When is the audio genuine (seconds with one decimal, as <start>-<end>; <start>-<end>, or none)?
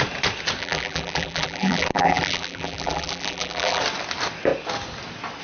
0.0-0.6; 3.8-5.4